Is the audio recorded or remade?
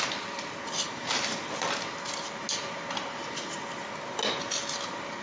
recorded